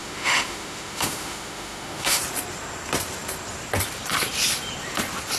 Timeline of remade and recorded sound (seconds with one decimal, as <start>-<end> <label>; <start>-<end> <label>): 0.0-2.2 remade; 2.2-5.4 recorded